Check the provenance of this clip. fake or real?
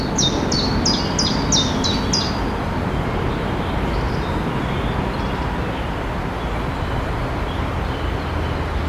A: real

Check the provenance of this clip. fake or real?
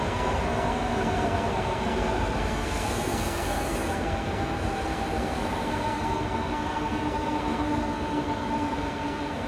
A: fake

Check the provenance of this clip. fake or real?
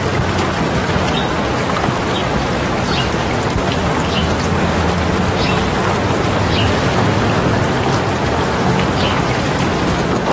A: real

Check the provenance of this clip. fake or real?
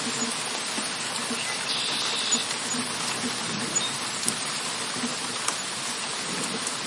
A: real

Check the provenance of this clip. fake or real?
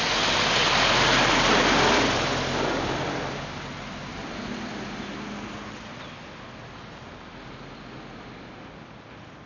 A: real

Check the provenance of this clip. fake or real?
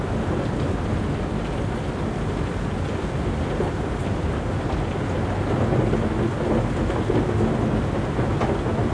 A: real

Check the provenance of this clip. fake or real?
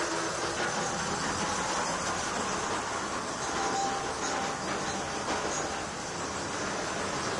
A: real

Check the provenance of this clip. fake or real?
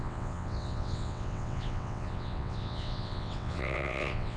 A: fake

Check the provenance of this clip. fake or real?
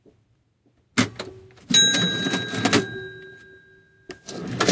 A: real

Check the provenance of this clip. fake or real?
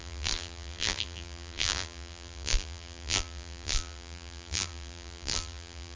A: fake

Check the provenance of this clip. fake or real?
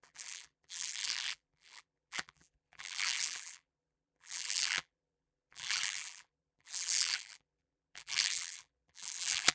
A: fake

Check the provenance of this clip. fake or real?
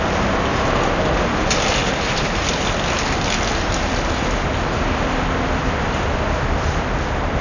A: real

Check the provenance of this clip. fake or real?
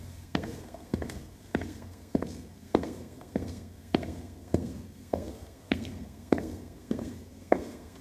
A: fake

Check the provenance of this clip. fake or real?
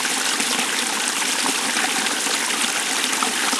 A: real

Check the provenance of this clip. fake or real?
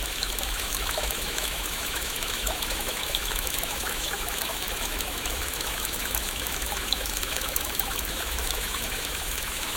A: fake